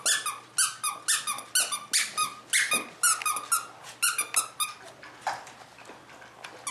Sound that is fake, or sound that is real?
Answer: real